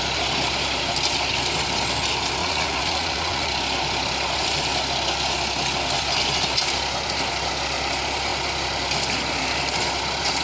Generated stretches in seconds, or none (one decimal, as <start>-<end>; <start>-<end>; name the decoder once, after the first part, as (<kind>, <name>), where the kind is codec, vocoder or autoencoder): 2.4-3.5 (vocoder, Vocos)

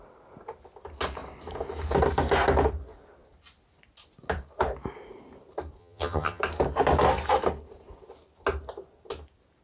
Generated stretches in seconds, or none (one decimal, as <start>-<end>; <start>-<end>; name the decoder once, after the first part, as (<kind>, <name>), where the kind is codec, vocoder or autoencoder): 5.8-6.4 (vocoder, HiFi-GAN)

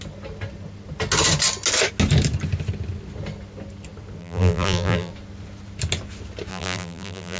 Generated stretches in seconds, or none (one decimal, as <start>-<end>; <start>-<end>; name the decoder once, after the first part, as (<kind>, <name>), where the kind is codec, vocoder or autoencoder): 4.2-5.1 (vocoder, BigVGAN v2); 6.5-7.4